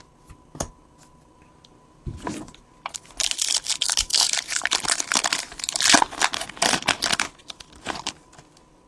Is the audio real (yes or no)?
yes